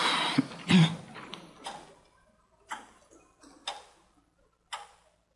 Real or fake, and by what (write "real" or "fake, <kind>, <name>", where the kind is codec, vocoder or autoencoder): real